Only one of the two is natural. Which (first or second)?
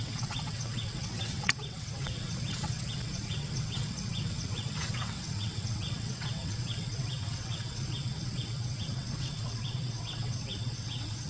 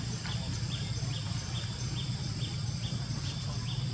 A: second